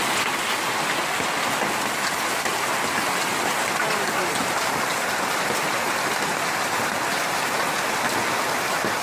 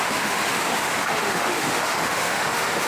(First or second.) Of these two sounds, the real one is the first